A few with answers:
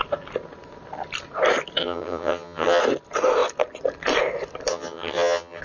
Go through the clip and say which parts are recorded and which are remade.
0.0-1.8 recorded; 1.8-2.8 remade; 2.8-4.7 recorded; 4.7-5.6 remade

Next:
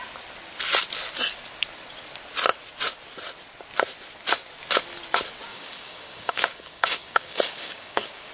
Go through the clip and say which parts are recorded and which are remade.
0.0-5.5 recorded; 5.5-8.3 remade